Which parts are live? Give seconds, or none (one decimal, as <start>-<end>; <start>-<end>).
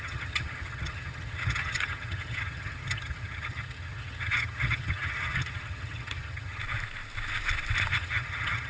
6.6-7.9